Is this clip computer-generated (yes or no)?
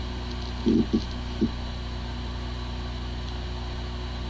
no